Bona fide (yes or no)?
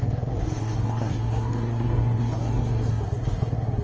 no